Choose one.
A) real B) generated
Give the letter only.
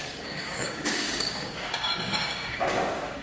B